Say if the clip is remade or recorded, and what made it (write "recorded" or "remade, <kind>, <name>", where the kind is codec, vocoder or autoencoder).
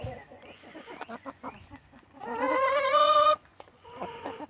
remade, vocoder, Vocos